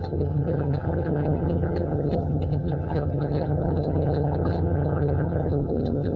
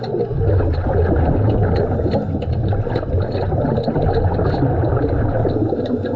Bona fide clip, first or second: second